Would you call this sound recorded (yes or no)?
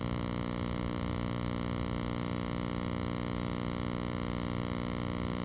yes